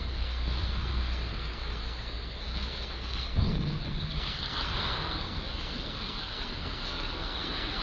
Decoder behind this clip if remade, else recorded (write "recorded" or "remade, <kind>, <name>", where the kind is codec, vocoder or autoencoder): remade, codec, SNAC